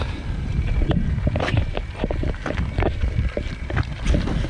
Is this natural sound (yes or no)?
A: yes